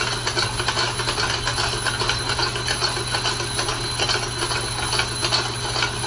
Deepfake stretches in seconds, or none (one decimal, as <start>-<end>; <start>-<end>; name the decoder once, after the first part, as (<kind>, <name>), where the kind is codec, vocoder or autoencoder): none